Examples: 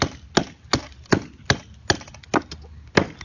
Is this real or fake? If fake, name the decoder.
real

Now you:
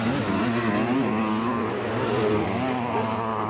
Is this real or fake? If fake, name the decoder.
real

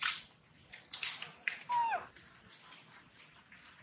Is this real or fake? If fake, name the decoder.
real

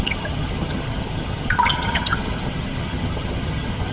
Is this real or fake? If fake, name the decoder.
fake, vocoder, HiFi-GAN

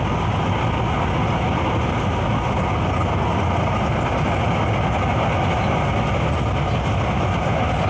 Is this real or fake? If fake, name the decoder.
real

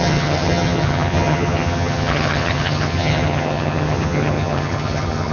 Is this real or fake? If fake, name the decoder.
fake, vocoder, HiFi-GAN